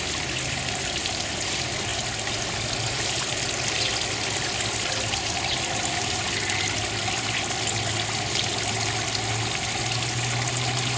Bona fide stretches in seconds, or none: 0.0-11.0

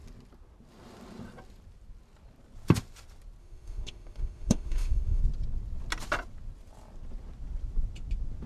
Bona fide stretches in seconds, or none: 0.0-3.4; 5.2-8.5

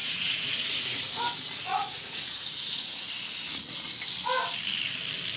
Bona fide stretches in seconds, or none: 1.2-1.7; 3.1-5.4

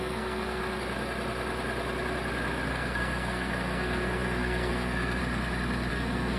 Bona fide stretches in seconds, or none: 0.6-2.7; 5.2-5.9

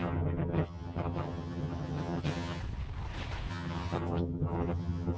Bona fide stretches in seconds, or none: 2.6-3.5

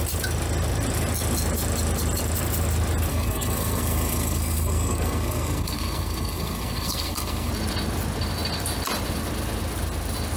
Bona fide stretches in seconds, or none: 0.0-3.1; 7.5-10.4